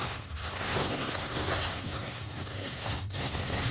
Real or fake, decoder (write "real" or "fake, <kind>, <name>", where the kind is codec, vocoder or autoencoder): fake, codec, SNAC